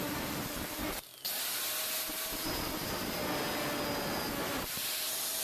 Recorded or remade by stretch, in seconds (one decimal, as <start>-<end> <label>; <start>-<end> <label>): 0.0-1.1 remade; 1.1-1.8 recorded; 1.8-3.2 remade; 3.2-4.4 recorded; 4.4-5.4 remade